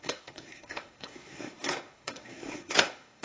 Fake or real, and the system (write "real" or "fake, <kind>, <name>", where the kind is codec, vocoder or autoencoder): fake, codec, SNAC